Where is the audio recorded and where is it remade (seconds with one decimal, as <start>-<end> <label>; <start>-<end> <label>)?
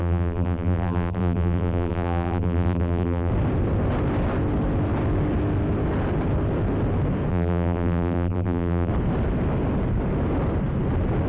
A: 0.0-3.3 remade; 3.3-7.3 recorded; 7.3-8.9 remade; 8.9-11.3 recorded